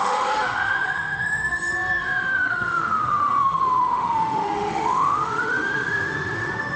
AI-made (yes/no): yes